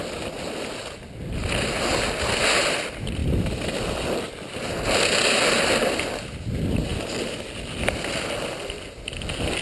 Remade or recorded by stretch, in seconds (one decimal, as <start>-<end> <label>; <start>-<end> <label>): 0.0-9.6 recorded